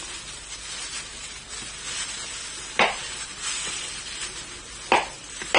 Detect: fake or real real